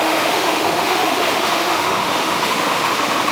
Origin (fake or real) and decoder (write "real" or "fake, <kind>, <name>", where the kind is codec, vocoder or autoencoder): fake, autoencoder, DAC-VAE